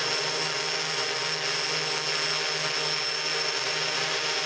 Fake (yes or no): no